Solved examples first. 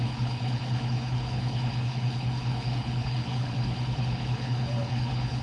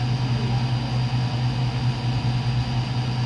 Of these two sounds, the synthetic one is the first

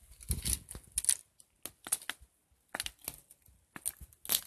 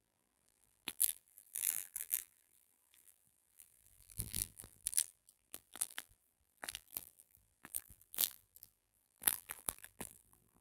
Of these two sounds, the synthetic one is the second